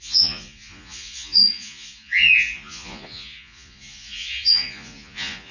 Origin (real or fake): fake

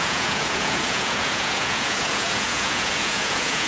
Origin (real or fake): fake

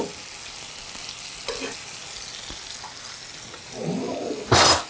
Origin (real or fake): real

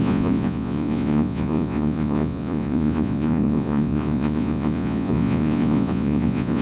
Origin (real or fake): fake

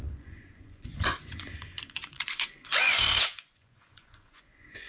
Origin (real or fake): fake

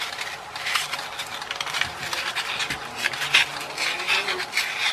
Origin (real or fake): real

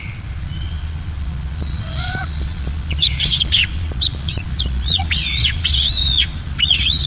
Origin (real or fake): fake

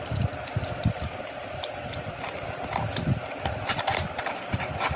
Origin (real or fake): real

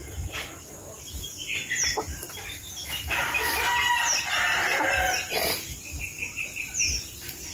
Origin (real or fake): real